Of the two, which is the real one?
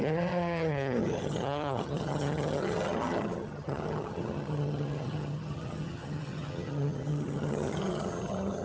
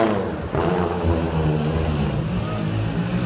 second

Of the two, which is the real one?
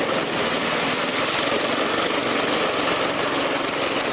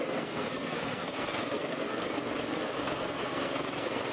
first